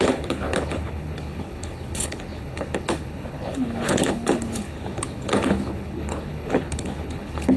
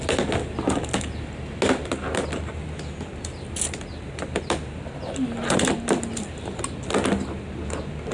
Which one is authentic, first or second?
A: second